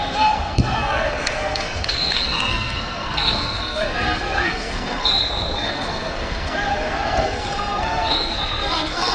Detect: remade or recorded remade